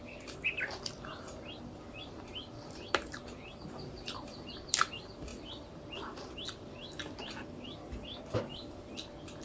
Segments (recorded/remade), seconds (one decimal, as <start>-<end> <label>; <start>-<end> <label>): 0.0-9.4 recorded

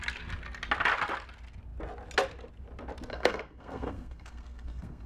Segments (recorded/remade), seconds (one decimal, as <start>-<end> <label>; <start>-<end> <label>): 0.0-3.1 recorded; 3.1-5.1 remade

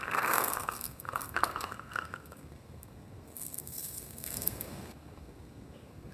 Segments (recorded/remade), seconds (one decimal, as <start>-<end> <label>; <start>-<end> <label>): 0.0-6.1 remade

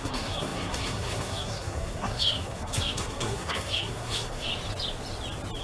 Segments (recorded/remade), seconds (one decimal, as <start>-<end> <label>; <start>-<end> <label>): 0.0-4.5 remade; 4.5-5.6 recorded

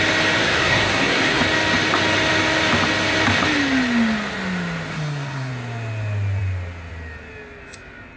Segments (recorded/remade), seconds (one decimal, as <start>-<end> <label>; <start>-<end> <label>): 0.0-0.4 recorded; 0.4-1.4 remade; 1.4-4.9 recorded; 4.9-5.5 remade; 5.5-8.2 recorded

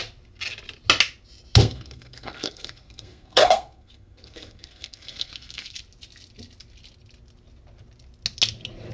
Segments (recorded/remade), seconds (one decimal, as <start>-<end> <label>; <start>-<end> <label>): 0.0-1.6 recorded; 1.6-5.8 remade; 5.8-8.9 recorded